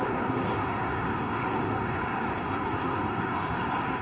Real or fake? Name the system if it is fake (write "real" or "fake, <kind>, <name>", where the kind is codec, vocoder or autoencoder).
fake, codec, SNAC